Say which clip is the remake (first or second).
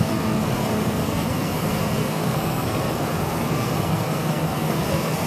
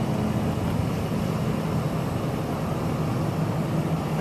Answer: first